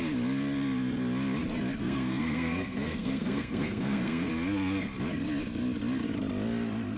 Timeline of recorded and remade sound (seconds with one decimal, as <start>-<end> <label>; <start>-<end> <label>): 0.0-1.8 recorded; 1.8-4.3 remade; 4.3-7.0 recorded